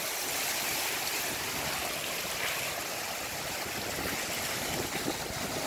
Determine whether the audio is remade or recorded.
recorded